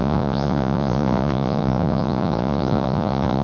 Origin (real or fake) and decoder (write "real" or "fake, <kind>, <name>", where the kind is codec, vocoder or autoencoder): fake, vocoder, Vocos